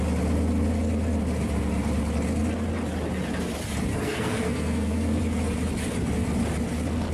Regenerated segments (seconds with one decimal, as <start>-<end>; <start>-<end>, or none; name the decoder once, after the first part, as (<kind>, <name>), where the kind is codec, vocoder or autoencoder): 3.9-5.2 (codec, SNAC)